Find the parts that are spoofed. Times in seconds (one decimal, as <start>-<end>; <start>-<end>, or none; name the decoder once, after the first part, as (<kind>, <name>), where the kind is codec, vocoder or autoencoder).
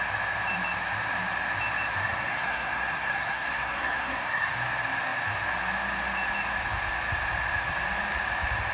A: 2.0-4.5 (codec, SNAC)